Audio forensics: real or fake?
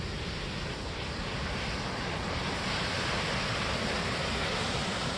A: real